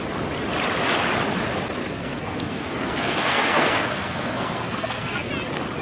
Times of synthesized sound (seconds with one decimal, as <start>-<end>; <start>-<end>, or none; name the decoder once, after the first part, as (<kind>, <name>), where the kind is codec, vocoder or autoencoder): 1.8-5.3 (codec, SNAC)